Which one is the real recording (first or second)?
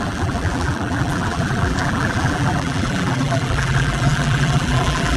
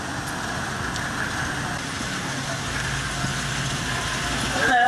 second